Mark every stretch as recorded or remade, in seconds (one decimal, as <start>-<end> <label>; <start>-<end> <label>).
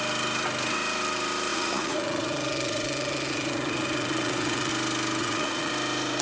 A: 0.0-1.5 recorded; 1.5-4.7 remade; 4.7-5.2 recorded; 5.2-5.7 remade; 5.7-6.2 recorded